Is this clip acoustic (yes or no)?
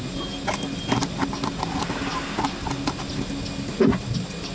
yes